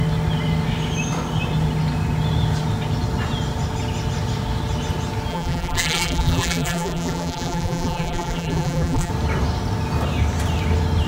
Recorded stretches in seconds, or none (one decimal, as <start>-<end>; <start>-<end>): 0.0-5.3; 9.1-11.1